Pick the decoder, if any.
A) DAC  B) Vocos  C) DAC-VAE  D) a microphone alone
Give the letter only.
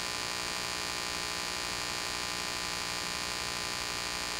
D